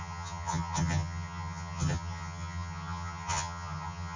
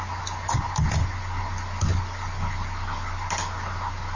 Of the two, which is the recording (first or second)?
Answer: second